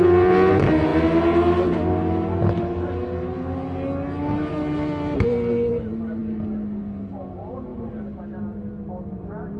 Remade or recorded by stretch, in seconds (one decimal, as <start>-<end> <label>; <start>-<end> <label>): 0.0-9.6 recorded